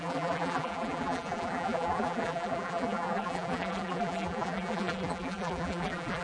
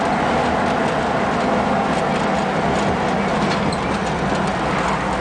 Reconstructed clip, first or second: first